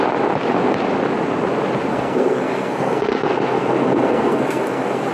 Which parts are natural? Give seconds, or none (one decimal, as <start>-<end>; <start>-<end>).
0.0-1.9